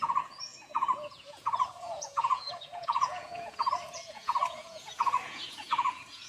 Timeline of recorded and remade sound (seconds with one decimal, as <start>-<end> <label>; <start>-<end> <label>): 0.0-6.3 remade